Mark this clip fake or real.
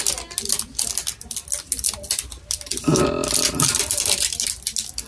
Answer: real